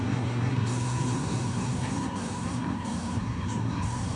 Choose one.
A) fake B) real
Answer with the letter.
A